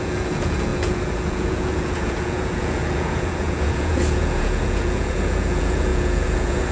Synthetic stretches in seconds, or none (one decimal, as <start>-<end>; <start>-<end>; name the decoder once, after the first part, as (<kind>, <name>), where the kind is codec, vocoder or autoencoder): 0.0-6.7 (vocoder, Vocos)